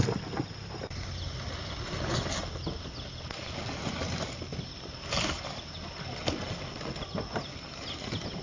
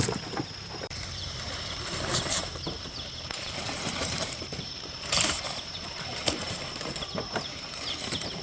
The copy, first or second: second